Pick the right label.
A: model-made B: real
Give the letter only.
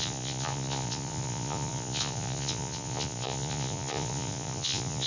A